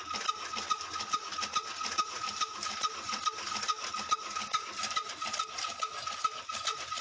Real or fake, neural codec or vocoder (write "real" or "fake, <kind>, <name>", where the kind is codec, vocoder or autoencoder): real